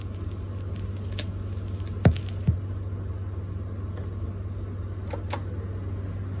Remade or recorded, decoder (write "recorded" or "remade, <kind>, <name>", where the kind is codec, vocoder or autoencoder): recorded